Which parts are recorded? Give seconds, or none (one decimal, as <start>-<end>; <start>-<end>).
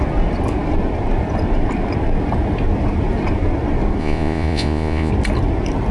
0.0-4.0; 5.1-5.9